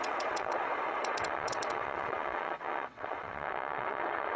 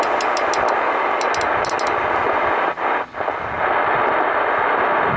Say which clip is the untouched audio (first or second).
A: second